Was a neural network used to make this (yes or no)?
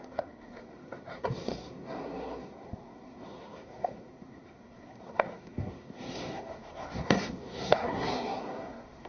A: yes